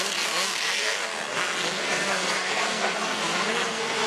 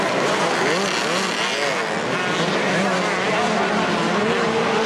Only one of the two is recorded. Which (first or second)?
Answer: second